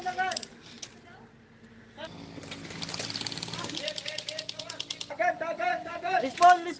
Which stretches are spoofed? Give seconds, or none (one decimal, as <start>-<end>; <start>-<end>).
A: 5.7-6.3